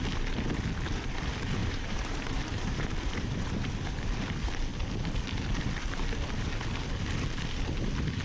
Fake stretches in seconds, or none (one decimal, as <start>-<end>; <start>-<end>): 1.6-3.7